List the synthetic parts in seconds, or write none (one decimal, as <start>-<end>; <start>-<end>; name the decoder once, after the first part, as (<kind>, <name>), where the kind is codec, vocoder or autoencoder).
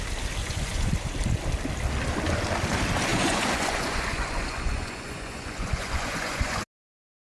0.4-0.9 (vocoder, Vocos); 3.1-6.6